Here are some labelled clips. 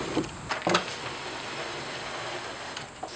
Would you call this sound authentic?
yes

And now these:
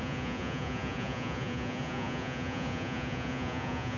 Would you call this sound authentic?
no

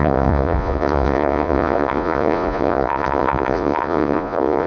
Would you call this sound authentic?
no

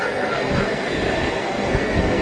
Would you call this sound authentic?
no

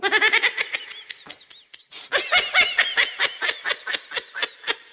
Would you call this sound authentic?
yes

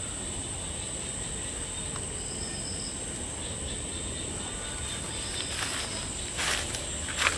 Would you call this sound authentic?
yes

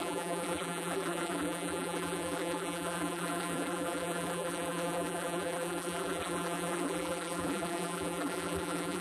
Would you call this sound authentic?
no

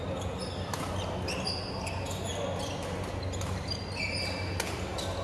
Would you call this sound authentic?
yes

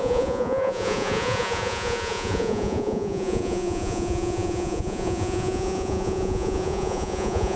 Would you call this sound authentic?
no